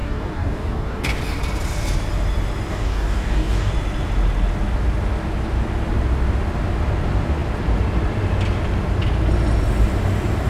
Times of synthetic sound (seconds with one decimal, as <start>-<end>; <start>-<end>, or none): 0.0-1.2; 2.7-3.7